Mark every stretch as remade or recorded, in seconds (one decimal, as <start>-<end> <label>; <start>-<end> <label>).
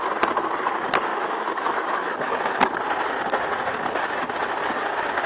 0.0-1.1 recorded; 1.1-2.2 remade; 2.2-5.3 recorded